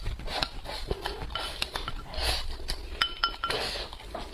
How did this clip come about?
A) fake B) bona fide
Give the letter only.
B